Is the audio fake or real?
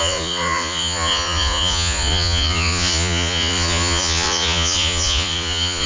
fake